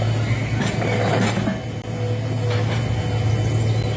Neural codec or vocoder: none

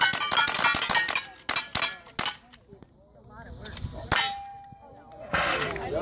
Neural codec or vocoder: none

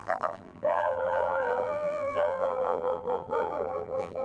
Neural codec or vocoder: vocoder, BigVGAN v2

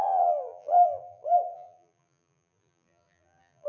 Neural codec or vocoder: vocoder, BigVGAN v2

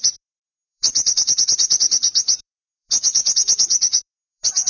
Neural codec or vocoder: vocoder, BigVGAN v2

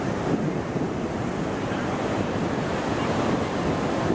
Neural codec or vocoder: vocoder, BigVGAN v2